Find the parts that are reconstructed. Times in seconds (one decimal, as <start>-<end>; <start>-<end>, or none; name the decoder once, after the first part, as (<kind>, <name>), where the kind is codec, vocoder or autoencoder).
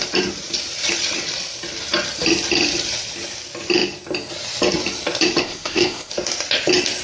5.4-6.1 (codec, ZipCodec)